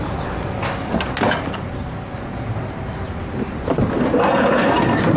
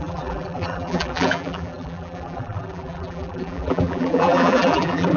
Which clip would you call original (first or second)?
first